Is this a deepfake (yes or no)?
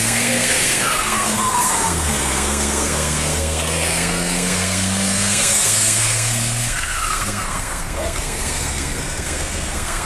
yes